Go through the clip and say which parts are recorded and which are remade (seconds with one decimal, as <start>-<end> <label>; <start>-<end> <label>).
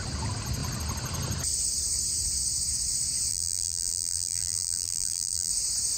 0.0-3.3 recorded; 3.3-5.5 remade; 5.5-6.0 recorded